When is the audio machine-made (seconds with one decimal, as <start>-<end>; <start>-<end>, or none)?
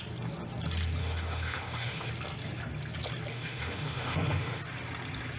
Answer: 1.0-2.1; 3.3-4.6